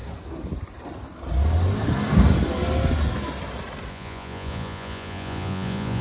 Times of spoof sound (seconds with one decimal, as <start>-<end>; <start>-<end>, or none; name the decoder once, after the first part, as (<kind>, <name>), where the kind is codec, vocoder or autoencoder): 3.9-6.0 (vocoder, Vocos)